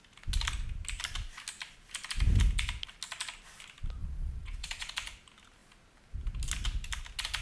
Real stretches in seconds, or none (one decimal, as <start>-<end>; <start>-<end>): 0.0-4.0; 4.9-7.4

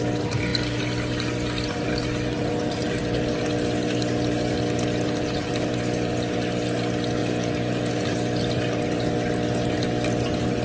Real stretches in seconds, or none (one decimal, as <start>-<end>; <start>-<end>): 0.0-7.2; 7.9-10.6

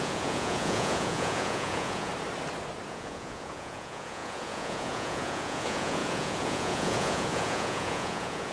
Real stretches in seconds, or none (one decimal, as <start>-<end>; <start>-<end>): 2.1-2.9

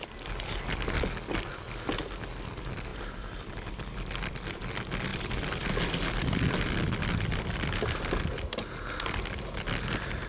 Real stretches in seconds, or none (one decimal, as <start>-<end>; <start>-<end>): 0.0-10.3

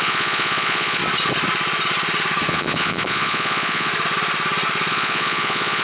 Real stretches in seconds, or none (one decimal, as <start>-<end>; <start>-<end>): 1.0-2.5; 3.9-4.9

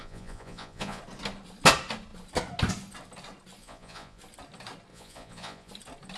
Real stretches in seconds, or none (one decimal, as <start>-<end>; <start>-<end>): 1.0-3.6; 4.2-4.9; 5.7-6.2